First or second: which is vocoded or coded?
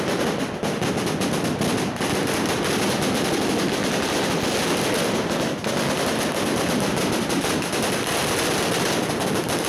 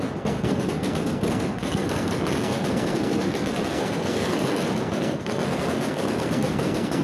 second